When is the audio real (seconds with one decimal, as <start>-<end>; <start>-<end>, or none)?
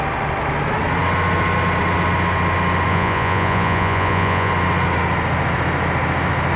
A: 0.0-2.9; 4.5-6.6